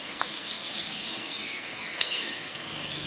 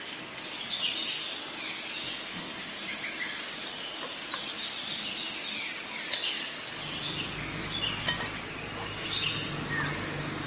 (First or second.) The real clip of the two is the second